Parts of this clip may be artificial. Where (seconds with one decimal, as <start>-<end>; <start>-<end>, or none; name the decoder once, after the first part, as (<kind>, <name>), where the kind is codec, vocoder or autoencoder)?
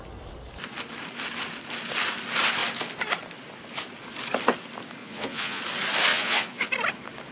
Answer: 5.0-5.6 (vocoder, Vocos); 6.1-6.7